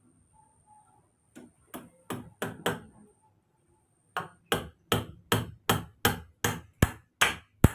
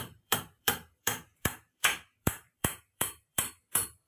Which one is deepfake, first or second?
second